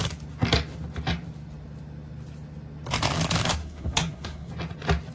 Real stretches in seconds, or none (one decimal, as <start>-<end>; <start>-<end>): 0.0-3.6; 4.5-5.1